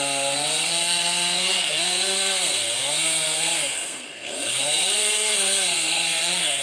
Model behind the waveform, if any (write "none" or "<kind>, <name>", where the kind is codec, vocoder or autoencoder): codec, SNAC